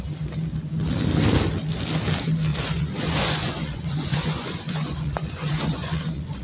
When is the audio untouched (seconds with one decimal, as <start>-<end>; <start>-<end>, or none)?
0.0-2.5